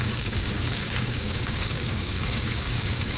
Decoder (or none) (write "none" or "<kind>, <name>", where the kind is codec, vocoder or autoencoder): codec, DAC